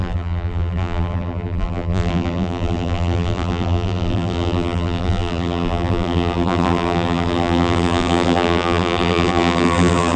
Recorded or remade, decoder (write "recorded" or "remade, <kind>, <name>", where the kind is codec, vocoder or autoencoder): remade, vocoder, BigVGAN v2